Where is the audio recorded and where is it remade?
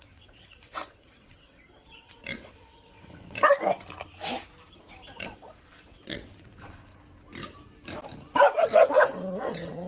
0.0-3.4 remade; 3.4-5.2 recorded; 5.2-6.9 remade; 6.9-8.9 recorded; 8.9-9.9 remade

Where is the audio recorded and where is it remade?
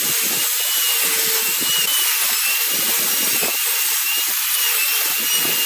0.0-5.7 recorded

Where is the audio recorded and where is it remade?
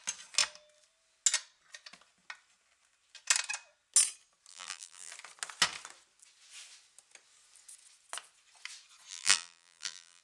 0.0-4.5 recorded; 4.5-5.1 remade; 5.1-9.1 recorded; 9.1-10.2 remade